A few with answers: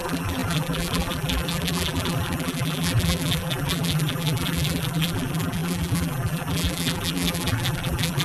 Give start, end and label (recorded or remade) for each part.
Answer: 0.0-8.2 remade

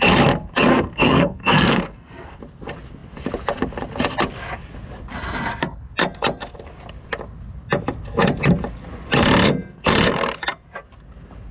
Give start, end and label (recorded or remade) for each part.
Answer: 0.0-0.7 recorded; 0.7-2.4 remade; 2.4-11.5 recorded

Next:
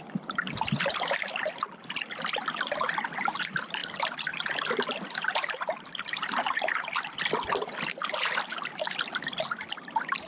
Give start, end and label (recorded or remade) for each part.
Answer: 0.0-10.3 recorded